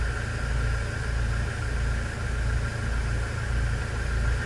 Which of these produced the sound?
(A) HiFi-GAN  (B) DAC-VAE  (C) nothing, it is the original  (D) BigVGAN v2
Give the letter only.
C